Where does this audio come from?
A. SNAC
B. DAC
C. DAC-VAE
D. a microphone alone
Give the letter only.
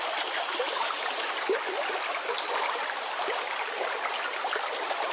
D